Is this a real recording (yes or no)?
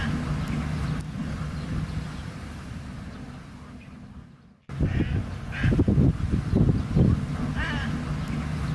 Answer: yes